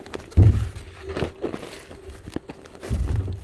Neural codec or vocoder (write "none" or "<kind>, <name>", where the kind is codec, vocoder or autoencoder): none